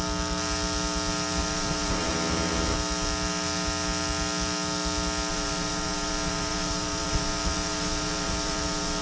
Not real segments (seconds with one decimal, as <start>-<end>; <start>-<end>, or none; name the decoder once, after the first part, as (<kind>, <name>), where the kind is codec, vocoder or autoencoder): 1.4-2.1 (vocoder, BigVGAN v2); 5.3-9.0